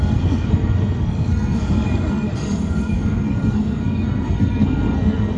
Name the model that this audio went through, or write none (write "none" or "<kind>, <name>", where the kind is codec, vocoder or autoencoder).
codec, SNAC